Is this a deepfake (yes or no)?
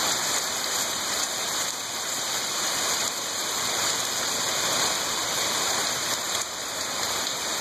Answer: yes